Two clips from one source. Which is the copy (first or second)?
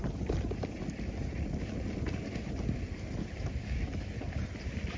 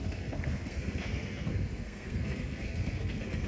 second